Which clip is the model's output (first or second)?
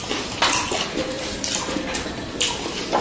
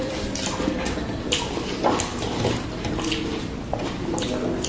first